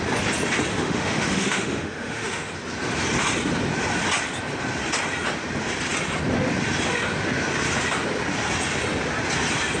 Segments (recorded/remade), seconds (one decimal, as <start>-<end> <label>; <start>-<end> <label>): 0.0-0.7 recorded; 0.7-2.5 remade; 2.5-9.8 recorded